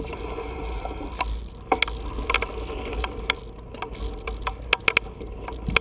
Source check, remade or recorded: recorded